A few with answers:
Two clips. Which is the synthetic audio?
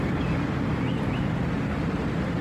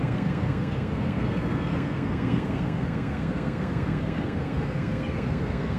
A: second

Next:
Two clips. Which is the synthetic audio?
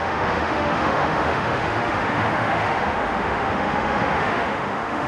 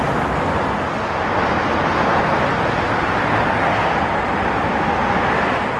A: first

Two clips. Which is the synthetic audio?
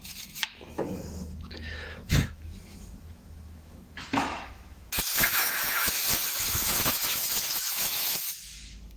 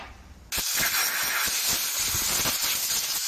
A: first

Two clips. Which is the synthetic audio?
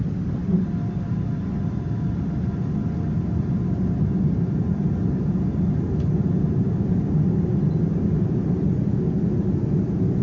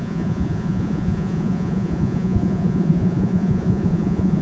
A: second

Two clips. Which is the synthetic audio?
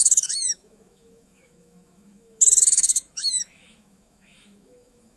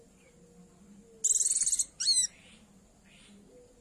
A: first